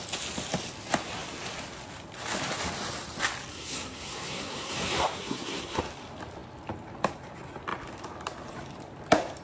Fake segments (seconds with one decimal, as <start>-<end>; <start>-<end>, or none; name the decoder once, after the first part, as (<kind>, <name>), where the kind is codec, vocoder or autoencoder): 3.5-5.8 (codec, SNAC)